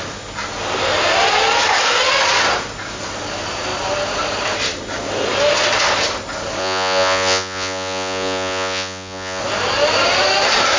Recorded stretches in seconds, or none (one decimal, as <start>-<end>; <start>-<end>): 0.0-6.6; 9.4-10.8

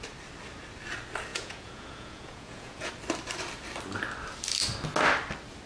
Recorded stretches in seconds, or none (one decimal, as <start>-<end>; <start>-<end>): 0.0-1.3; 2.9-5.7

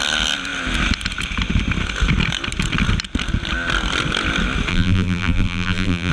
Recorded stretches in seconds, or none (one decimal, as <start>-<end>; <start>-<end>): 0.0-4.7

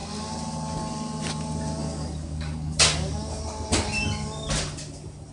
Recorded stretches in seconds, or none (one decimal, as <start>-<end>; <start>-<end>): 0.0-1.8; 3.4-5.3

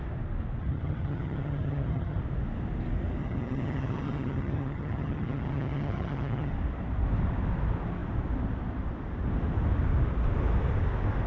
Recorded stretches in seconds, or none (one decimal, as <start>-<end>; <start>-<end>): 0.0-0.6; 2.2-3.2; 6.5-11.3

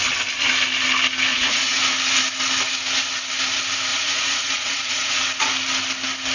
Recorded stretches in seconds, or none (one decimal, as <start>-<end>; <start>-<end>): 0.0-1.3; 1.8-3.9; 5.2-6.3

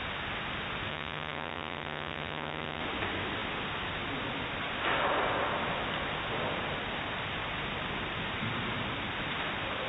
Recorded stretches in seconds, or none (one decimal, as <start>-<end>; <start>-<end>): 0.0-0.9; 2.8-9.9